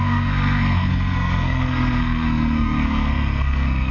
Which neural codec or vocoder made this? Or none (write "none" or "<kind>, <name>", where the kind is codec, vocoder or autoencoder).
codec, SNAC